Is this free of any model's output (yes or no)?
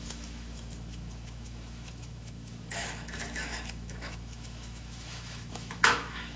no